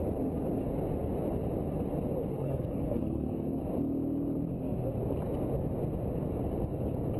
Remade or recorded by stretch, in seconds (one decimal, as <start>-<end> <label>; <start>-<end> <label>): 0.0-2.3 recorded; 2.3-3.6 remade; 3.6-7.2 recorded

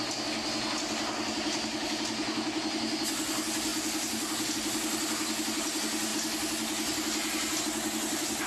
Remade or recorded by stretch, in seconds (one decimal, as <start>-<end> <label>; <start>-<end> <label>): 0.0-8.5 recorded